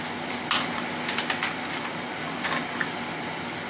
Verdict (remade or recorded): recorded